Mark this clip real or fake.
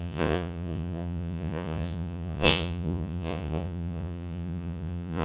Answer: fake